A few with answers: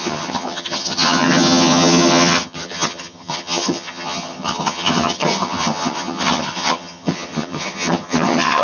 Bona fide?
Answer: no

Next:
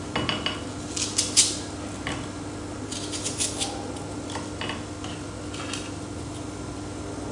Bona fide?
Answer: yes